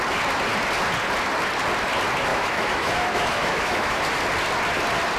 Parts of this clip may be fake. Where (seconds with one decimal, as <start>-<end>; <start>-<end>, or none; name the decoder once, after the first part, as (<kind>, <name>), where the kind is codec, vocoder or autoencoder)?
2.3-4.0 (autoencoder, DAC-VAE)